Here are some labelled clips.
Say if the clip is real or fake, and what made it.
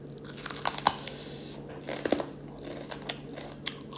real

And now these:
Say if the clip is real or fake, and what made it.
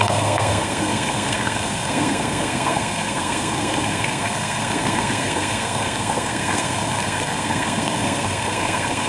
fake, codec, SNAC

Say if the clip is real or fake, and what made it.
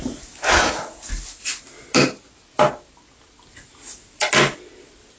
real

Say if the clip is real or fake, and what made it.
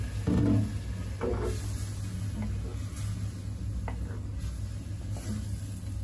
real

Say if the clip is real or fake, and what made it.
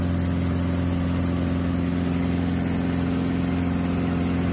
real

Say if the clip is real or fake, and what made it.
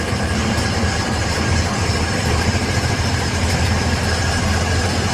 fake, vocoder, BigVGAN v2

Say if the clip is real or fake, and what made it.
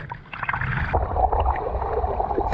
real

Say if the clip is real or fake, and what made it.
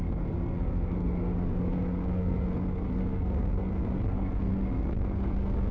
fake, codec, SNAC